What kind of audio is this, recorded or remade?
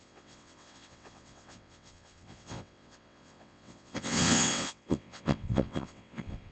remade